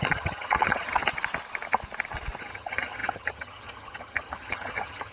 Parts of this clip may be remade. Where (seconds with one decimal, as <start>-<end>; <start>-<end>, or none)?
0.0-1.0; 2.4-5.1